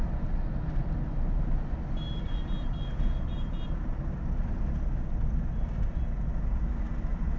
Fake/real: real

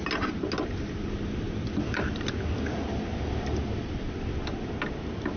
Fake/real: real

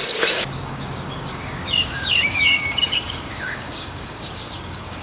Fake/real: fake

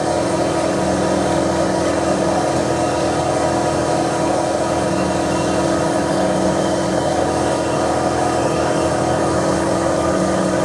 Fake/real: fake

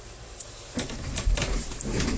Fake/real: real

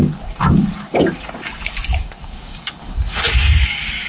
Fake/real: fake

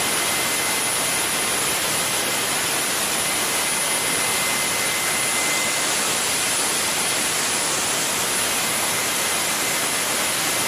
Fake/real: real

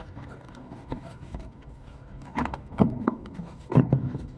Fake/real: fake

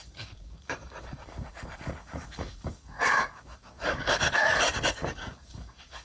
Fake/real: fake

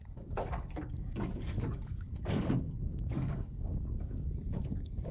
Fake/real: fake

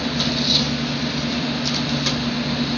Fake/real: real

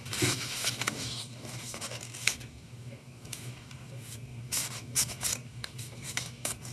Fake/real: fake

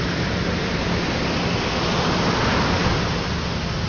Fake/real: real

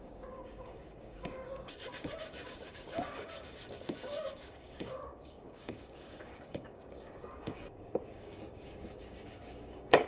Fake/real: fake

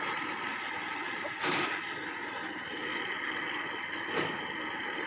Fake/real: real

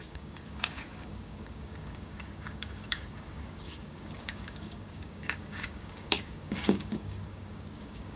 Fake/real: fake